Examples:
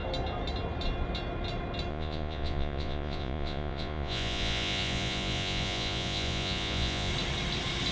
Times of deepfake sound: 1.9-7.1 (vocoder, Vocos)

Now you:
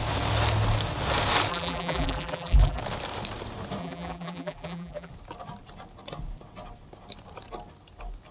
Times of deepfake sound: 1.5-2.8 (vocoder, BigVGAN v2); 3.8-5.1

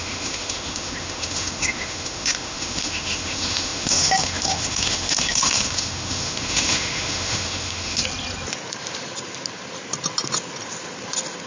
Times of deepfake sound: 0.0-8.0 (autoencoder, DAC-VAE)

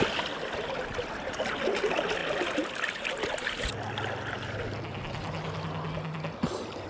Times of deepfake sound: none

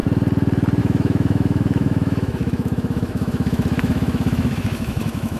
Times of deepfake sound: 0.8-5.4 (autoencoder, DAC-VAE)

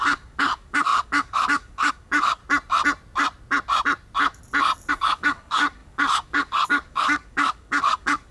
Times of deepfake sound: 0.0-2.4 (codec, DAC); 4.9-8.3

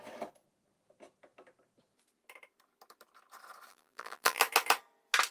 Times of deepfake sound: 3.7-4.4 (vocoder, BigVGAN v2)

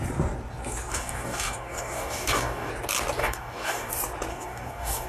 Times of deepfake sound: 0.9-2.7 (codec, DAC); 3.2-3.9; 4.3-5.1